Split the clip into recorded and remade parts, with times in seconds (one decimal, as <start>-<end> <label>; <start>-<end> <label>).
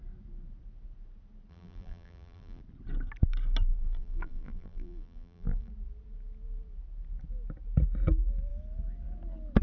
0.0-1.5 recorded; 1.5-2.6 remade; 2.6-3.7 recorded; 3.7-5.7 remade; 5.7-9.6 recorded